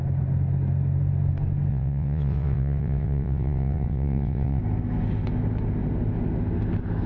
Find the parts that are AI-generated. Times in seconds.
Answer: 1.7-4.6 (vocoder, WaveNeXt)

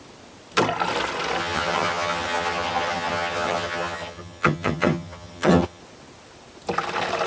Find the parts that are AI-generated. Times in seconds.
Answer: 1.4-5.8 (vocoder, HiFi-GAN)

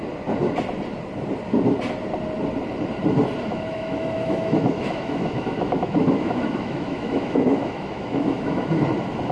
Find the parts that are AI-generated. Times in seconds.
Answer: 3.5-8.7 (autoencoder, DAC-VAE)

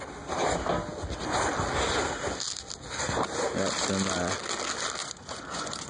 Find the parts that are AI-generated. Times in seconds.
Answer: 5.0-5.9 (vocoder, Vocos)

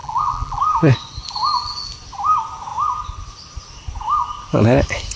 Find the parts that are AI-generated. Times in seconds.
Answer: 0.0-0.6 (vocoder, BigVGAN v2)